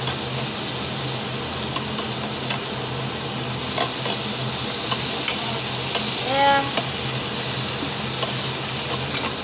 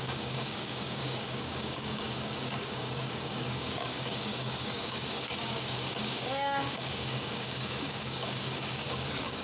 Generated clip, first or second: second